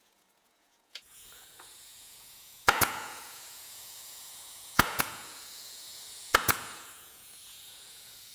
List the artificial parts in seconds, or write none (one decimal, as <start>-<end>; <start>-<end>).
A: 0.0-8.3